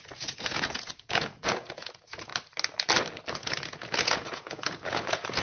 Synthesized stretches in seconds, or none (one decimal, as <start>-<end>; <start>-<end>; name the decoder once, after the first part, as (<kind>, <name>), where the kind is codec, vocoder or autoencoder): 0.0-2.3 (vocoder, Vocos); 3.3-5.4